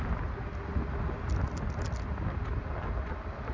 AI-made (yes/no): no